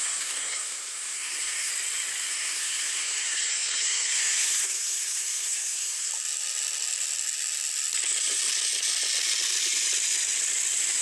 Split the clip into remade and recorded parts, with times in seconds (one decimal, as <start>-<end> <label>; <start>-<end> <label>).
0.0-1.7 remade; 1.7-2.3 recorded; 2.3-6.1 remade; 6.1-11.0 recorded